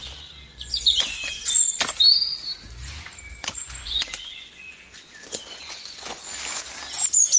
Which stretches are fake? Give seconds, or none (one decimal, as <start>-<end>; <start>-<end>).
0.5-1.8; 3.4-6.3